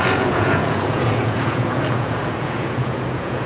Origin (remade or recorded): remade